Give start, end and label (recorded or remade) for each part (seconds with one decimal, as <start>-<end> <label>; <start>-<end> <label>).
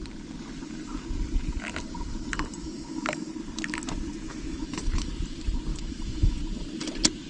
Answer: 0.0-2.6 recorded; 2.6-3.3 remade; 3.3-4.3 recorded; 4.3-5.1 remade; 5.1-5.7 recorded; 5.7-6.4 remade; 6.4-7.3 recorded